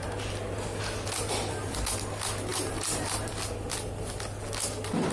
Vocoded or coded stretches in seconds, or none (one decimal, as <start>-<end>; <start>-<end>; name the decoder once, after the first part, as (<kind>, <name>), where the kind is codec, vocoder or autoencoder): 2.5-3.3 (vocoder, BigVGAN v2)